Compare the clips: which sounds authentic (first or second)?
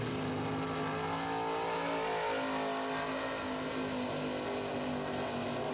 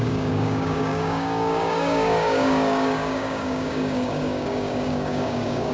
first